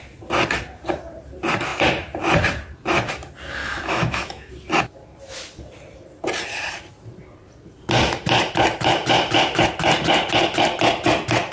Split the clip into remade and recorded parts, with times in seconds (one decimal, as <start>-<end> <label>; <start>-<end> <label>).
0.0-3.6 recorded; 3.6-4.5 remade; 4.5-11.5 recorded